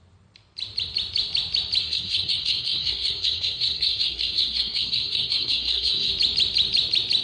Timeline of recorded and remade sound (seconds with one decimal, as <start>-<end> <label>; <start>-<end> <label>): 0.0-1.8 recorded; 1.8-6.1 remade; 6.1-7.2 recorded